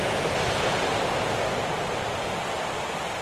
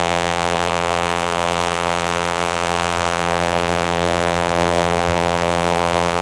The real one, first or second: first